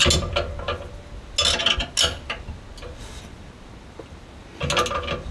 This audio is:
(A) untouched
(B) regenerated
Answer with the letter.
A